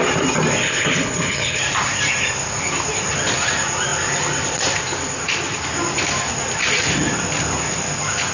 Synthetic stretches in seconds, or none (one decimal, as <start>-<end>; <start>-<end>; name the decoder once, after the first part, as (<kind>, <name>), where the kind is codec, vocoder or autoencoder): 0.6-1.6 (codec, HILCodec)